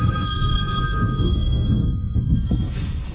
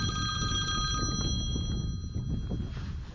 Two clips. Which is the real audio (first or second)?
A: second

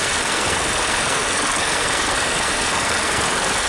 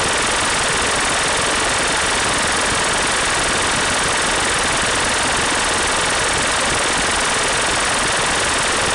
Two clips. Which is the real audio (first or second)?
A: second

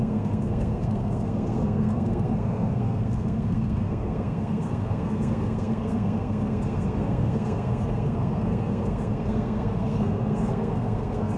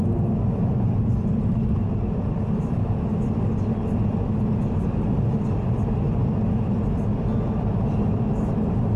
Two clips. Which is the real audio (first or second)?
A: second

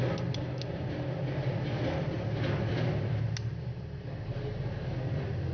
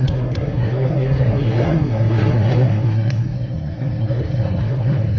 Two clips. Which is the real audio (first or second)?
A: first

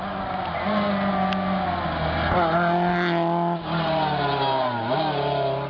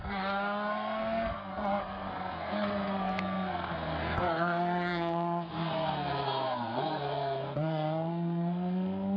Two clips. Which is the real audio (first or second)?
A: first